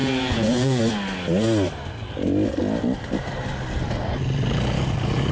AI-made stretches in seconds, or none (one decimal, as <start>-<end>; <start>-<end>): 0.0-0.8